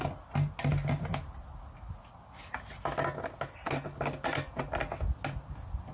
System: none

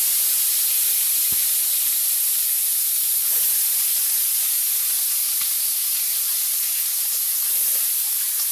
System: none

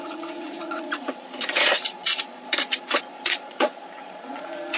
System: vocoder, Vocos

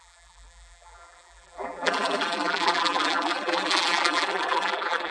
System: vocoder, BigVGAN v2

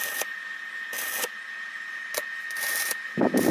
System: vocoder, BigVGAN v2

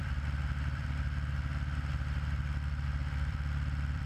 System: vocoder, BigVGAN v2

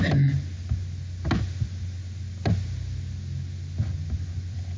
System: none